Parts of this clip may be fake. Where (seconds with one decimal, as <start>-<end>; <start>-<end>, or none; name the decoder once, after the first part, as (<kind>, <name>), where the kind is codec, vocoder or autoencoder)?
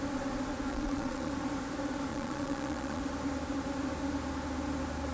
0.7-1.3 (vocoder, Vocos); 2.1-3.0